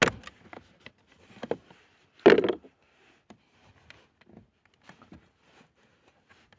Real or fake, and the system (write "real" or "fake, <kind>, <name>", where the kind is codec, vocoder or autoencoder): real